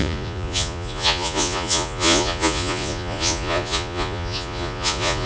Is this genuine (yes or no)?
no